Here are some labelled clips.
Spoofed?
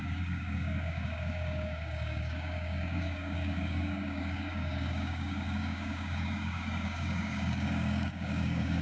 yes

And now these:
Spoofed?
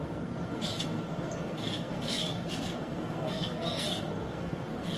yes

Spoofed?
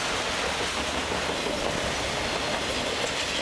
no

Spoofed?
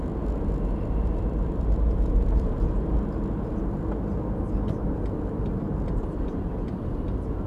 no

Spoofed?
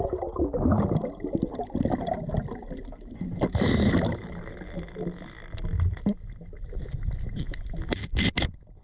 no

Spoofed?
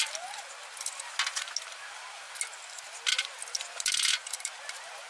no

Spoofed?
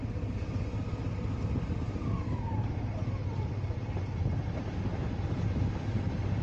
no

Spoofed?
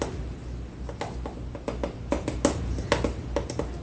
no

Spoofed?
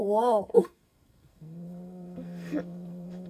yes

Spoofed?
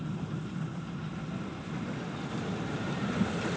no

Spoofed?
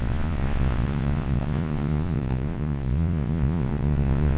yes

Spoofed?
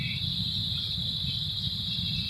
no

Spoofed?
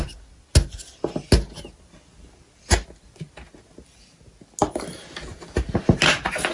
no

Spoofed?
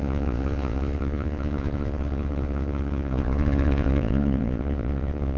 yes